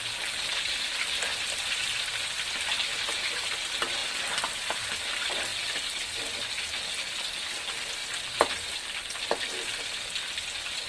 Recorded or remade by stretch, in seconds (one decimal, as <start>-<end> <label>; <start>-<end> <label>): 0.0-1.3 recorded; 1.3-2.1 remade; 2.1-4.0 recorded; 4.0-5.0 remade; 5.0-8.0 recorded; 8.0-10.4 remade; 10.4-10.9 recorded